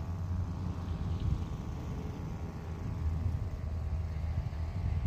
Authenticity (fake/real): real